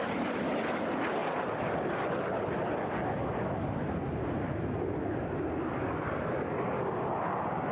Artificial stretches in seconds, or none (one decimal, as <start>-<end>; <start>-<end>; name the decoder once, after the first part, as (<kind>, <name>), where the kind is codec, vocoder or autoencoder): none